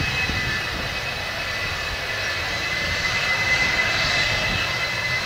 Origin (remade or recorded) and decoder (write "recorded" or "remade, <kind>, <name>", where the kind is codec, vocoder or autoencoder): recorded